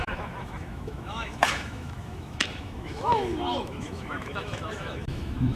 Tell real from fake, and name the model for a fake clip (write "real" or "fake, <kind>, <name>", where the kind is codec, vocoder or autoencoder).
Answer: fake, autoencoder, DAC-VAE